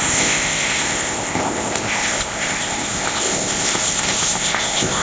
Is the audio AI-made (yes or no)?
yes